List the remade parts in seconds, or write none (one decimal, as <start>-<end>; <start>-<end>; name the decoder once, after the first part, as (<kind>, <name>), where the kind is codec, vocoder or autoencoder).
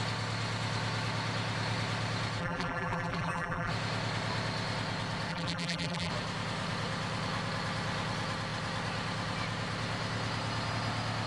2.4-3.7 (vocoder, BigVGAN v2); 5.3-6.1